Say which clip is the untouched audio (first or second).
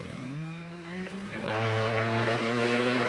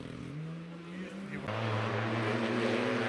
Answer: second